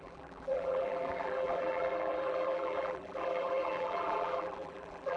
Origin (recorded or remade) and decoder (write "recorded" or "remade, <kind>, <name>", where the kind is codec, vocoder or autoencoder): remade, vocoder, BigVGAN v2